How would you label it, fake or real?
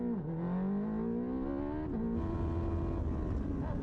real